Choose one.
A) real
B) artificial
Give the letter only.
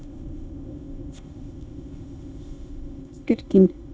B